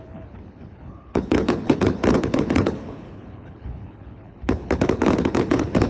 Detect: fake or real fake